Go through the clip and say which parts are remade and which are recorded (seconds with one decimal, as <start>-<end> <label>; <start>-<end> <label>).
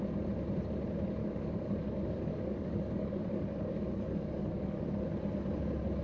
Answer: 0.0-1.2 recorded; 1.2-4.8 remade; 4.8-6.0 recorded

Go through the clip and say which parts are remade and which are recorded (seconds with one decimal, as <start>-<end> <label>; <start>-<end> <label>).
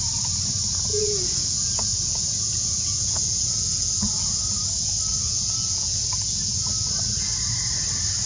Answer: 0.0-0.9 recorded; 0.9-4.6 remade; 4.6-5.1 recorded; 5.1-6.7 remade; 6.7-8.3 recorded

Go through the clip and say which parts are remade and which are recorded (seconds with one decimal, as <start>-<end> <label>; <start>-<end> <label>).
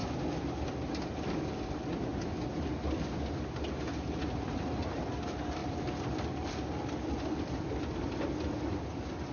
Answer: 0.0-5.6 recorded; 5.6-8.1 remade; 8.1-9.3 recorded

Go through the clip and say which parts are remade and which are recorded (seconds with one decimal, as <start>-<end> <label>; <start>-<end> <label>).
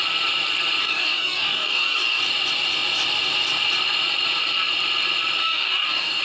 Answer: 0.0-0.8 recorded; 0.8-2.2 remade; 2.2-5.4 recorded; 5.4-6.2 remade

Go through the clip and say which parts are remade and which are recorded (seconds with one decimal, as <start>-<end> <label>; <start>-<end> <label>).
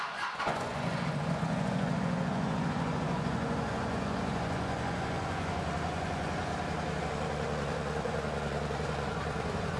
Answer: 0.0-6.5 remade; 6.5-7.0 recorded; 7.0-9.8 remade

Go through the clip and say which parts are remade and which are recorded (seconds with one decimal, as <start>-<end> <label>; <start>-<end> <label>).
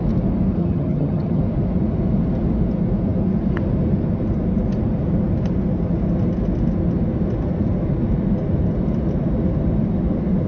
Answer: 0.0-0.6 recorded; 0.6-1.4 remade; 1.4-10.5 recorded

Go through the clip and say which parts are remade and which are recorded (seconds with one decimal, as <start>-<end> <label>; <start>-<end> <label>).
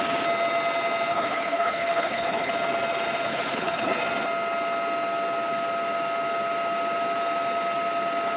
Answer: 0.0-1.1 recorded; 1.1-2.5 remade; 2.5-3.3 recorded; 3.3-4.0 remade; 4.0-8.4 recorded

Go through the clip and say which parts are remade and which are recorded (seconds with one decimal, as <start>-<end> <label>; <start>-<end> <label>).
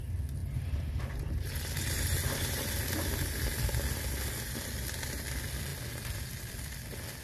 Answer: 0.0-0.4 recorded; 0.4-1.0 remade; 1.0-7.2 recorded